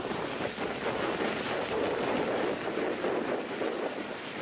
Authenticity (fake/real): real